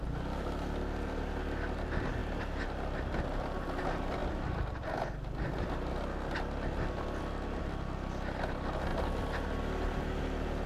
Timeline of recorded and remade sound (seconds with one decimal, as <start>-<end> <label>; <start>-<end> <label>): 0.0-10.7 recorded